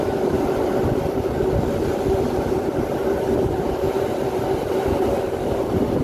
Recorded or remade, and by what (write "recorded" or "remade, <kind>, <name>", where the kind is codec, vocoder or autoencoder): recorded